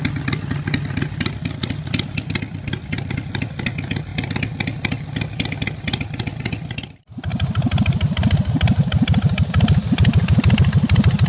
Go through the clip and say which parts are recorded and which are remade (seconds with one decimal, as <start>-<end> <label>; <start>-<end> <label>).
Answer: 0.0-4.1 remade; 4.1-5.6 recorded; 5.6-11.3 remade